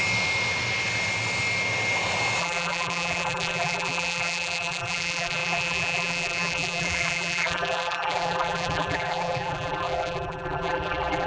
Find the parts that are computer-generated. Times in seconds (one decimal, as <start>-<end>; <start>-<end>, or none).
2.4-11.3